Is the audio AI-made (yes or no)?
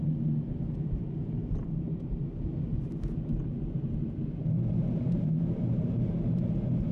yes